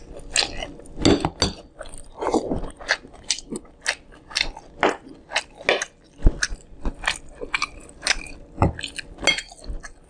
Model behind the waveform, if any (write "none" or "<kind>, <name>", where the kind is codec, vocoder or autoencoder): none